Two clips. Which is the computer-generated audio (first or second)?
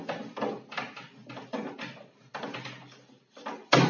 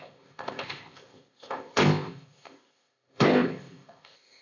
second